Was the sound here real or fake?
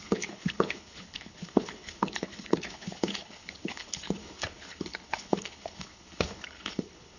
fake